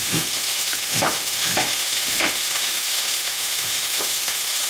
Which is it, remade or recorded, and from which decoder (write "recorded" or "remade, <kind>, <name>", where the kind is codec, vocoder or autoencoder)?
remade, autoencoder, DAC-VAE